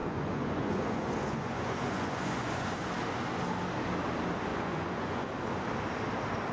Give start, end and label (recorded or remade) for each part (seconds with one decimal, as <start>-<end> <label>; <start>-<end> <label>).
0.0-2.8 remade; 2.8-4.5 recorded; 4.5-5.3 remade; 5.3-6.5 recorded